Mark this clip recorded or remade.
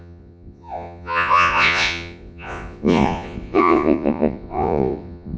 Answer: remade